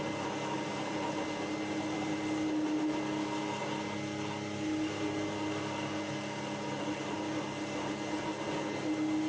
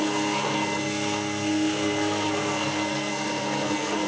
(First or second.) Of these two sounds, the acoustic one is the first